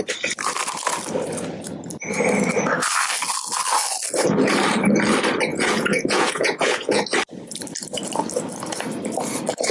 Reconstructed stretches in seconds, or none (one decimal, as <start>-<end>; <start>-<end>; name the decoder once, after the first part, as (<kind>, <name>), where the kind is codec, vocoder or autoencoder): 5.5-7.0 (vocoder, Vocos)